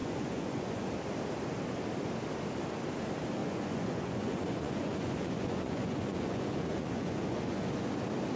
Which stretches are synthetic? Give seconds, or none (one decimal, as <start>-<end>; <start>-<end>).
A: 0.0-0.9; 3.4-7.9